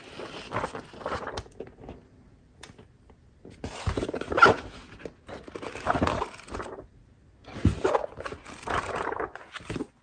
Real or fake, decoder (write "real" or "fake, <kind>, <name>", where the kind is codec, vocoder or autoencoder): real